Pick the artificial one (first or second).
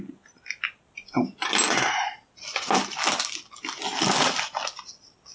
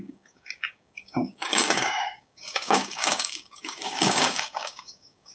second